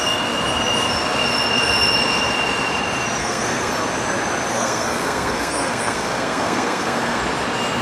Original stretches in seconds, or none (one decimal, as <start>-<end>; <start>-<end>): 0.0-3.2; 3.7-4.5; 7.2-7.8